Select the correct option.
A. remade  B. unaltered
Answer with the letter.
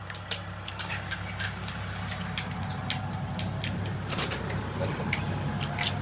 B